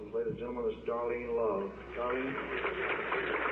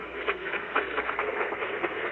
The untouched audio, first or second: first